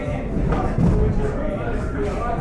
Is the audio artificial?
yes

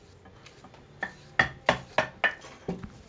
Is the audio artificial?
no